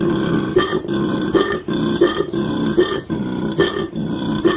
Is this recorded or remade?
remade